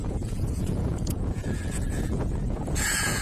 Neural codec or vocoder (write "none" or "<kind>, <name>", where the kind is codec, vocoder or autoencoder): vocoder, Vocos